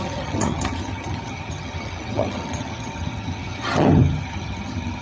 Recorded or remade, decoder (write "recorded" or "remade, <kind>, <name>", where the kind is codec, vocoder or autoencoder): remade, vocoder, HiFi-GAN